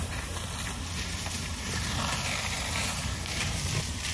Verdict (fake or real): real